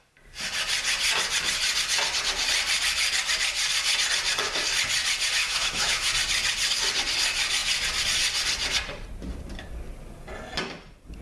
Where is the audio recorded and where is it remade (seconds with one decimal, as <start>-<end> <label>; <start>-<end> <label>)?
0.0-5.4 recorded; 5.4-6.1 remade; 6.1-11.2 recorded